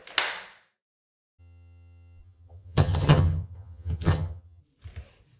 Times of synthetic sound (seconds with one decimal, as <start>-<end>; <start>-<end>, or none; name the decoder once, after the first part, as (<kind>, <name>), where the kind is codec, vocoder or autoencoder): 1.4-4.6 (vocoder, HiFi-GAN)

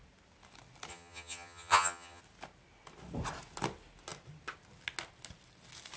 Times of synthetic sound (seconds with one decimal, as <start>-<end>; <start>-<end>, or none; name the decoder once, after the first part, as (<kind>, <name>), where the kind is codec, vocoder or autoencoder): 0.9-2.2 (vocoder, HiFi-GAN)

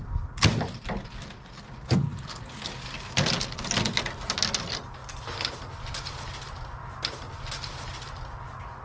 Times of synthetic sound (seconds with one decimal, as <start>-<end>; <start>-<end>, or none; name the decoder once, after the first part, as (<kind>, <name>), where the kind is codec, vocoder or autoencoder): none

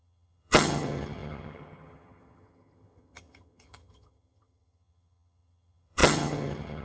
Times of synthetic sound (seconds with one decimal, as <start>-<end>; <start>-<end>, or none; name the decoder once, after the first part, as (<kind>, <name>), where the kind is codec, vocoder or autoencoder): 0.0-6.8 (vocoder, HiFi-GAN)

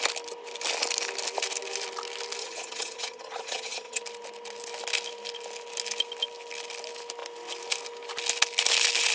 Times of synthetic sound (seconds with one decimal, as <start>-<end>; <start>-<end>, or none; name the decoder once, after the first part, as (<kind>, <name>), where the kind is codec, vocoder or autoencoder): 2.4-4.0 (vocoder, HiFi-GAN)

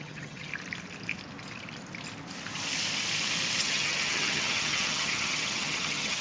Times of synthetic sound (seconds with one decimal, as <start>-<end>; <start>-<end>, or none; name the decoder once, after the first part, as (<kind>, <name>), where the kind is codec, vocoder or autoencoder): 0.0-0.5 (vocoder, HiFi-GAN); 3.6-6.2

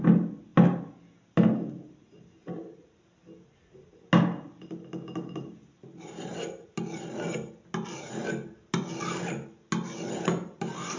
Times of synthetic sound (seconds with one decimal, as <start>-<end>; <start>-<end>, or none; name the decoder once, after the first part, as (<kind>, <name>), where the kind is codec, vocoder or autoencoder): none

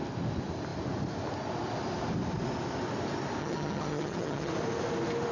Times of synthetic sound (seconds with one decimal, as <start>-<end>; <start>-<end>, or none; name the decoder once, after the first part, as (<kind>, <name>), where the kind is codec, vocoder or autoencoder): 3.4-4.5 (vocoder, HiFi-GAN)